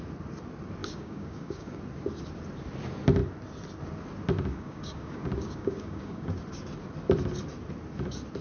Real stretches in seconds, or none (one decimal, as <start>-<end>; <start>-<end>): 0.0-0.8; 1.8-4.5; 6.4-8.4